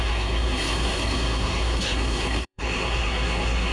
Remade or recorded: remade